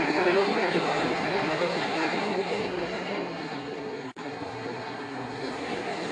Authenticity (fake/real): fake